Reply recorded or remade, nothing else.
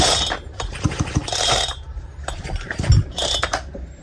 remade